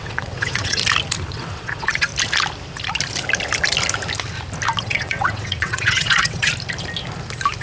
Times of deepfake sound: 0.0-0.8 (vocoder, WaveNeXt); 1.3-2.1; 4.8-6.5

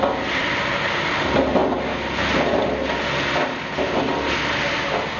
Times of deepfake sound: none